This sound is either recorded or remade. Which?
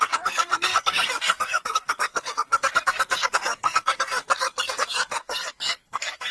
remade